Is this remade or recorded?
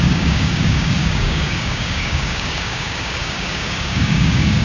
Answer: remade